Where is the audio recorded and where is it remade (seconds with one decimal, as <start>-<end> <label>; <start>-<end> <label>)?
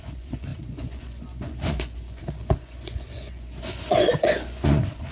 0.0-5.1 remade